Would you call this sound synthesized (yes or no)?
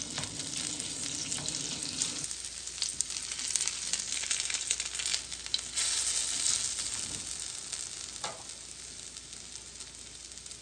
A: no